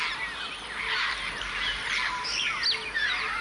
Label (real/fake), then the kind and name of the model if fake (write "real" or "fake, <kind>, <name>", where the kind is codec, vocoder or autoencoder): real